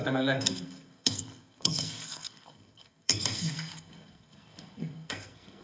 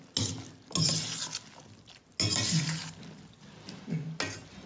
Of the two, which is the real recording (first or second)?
second